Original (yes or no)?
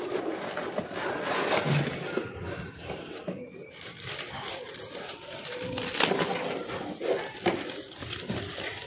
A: yes